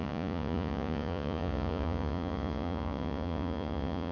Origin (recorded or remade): remade